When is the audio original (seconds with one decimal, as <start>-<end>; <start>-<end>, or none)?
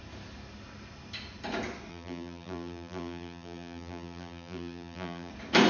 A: 0.0-1.9; 5.3-5.7